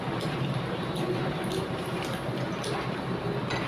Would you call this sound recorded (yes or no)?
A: yes